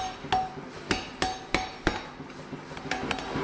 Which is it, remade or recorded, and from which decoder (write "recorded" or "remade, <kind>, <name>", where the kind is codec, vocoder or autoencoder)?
recorded